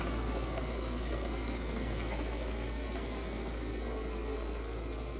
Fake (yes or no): yes